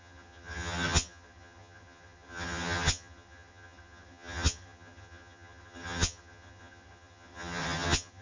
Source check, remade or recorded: remade